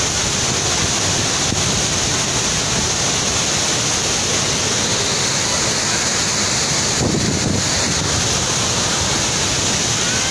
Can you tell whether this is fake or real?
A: real